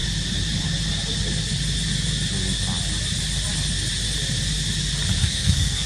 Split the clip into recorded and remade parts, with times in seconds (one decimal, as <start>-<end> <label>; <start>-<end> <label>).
0.0-5.2 recorded; 5.2-5.9 remade